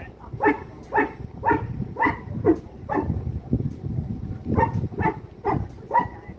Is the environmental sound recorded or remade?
recorded